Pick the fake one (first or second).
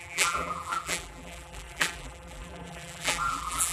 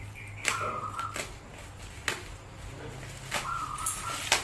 first